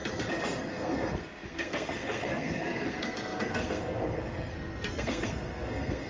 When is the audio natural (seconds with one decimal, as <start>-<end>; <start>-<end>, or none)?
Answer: 0.0-0.7